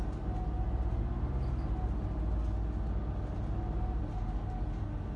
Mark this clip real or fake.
real